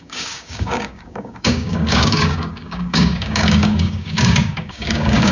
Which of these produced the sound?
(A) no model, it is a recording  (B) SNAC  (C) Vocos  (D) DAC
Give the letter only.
D